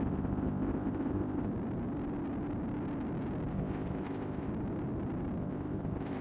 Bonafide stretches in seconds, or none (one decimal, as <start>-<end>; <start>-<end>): 1.5-3.5; 4.5-5.4